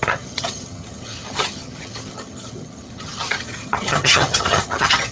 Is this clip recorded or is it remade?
remade